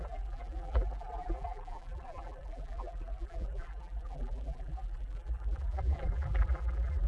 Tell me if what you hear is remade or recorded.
remade